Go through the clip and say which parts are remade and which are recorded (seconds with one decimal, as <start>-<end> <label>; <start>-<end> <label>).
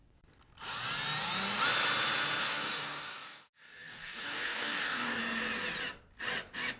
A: 0.0-2.4 recorded; 2.4-5.2 remade; 5.2-6.8 recorded